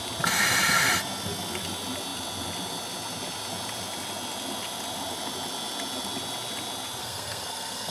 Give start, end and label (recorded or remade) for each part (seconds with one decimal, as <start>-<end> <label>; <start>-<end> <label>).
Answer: 0.0-7.0 recorded; 7.0-7.9 remade